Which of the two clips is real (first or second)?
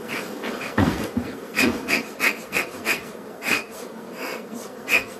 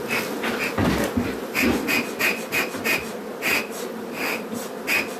second